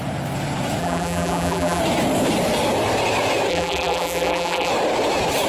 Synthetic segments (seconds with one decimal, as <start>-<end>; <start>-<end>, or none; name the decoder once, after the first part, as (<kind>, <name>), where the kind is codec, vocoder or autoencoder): 0.8-1.8 (vocoder, BigVGAN v2); 3.5-4.7